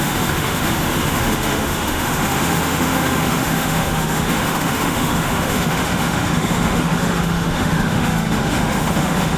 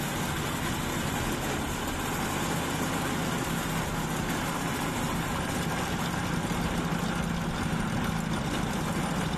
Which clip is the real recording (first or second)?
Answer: second